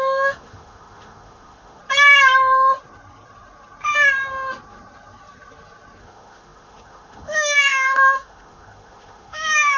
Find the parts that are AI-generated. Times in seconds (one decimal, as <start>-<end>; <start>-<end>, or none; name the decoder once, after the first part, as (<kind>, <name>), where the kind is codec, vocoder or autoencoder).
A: 0.0-1.8 (autoencoder, DAC-VAE); 6.0-9.8